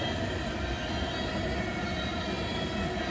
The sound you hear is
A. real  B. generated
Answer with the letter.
A